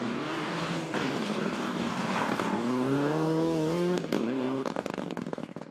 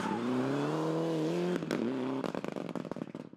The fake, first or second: first